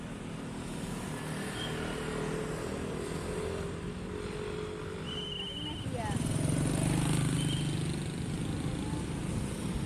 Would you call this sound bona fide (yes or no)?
yes